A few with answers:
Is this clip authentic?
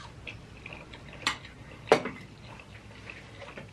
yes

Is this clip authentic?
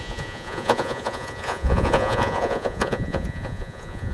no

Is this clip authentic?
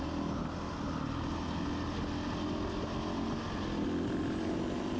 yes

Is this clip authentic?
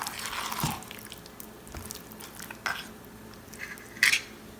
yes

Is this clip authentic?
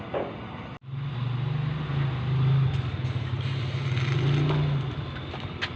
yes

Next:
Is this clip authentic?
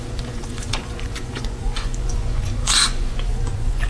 no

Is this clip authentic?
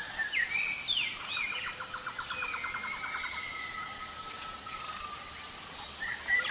yes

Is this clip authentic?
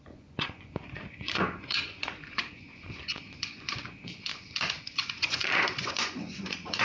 no